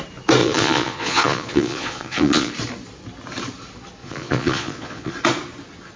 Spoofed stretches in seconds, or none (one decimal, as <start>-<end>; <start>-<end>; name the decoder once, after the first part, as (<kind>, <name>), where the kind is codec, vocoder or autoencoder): 0.4-2.5 (vocoder, Vocos); 4.0-5.1

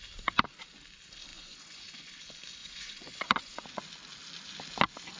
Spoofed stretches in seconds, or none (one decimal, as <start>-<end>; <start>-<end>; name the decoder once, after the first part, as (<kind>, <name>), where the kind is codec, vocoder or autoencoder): 1.3-2.1 (vocoder, Vocos); 2.6-3.9